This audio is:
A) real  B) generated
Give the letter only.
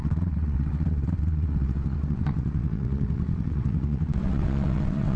B